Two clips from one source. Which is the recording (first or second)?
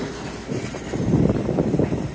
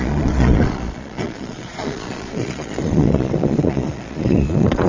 first